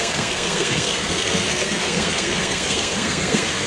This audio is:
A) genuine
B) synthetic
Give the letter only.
B